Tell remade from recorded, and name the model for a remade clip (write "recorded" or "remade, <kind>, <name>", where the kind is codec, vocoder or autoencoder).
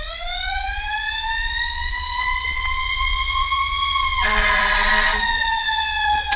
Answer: remade, vocoder, Vocos